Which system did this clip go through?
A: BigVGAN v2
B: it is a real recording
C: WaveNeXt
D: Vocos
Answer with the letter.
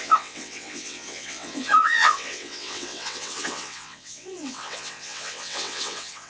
C